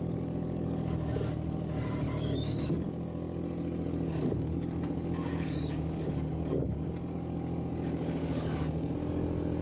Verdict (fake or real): fake